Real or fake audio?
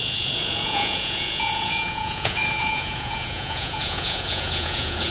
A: fake